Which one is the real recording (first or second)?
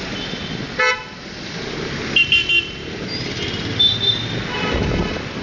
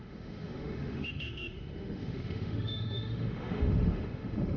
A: first